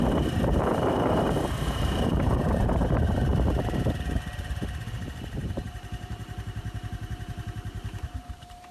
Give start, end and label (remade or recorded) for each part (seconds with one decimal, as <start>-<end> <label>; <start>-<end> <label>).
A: 0.0-3.3 remade; 3.3-5.3 recorded; 5.3-8.7 remade